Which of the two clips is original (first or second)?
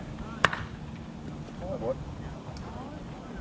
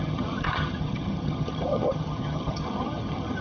first